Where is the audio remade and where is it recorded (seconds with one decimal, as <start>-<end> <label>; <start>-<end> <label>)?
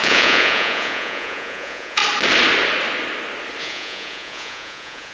0.0-2.0 remade; 2.0-3.6 recorded; 3.6-5.1 remade